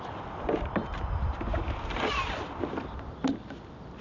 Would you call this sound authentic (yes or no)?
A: yes